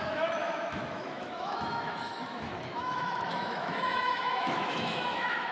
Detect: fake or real fake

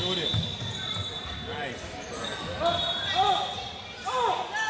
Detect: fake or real real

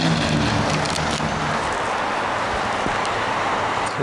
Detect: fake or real real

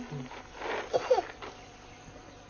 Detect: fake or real real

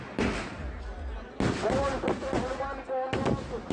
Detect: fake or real real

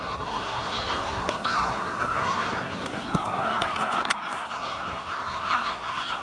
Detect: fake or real fake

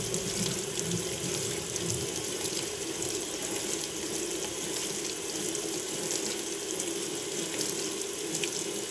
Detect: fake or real real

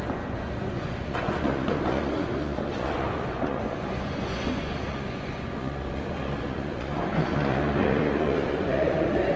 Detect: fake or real fake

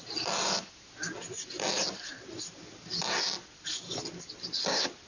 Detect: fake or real real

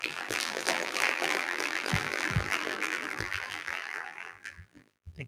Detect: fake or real fake